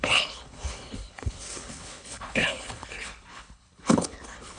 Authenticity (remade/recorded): remade